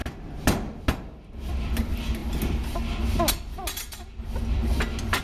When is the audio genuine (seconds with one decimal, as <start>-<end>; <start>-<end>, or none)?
0.0-5.2